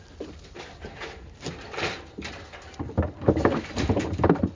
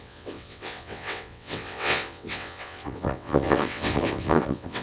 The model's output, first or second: second